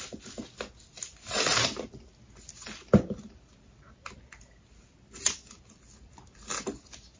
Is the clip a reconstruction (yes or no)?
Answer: no